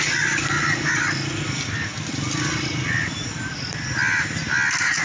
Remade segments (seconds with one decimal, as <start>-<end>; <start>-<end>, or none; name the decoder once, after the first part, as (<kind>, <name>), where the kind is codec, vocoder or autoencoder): none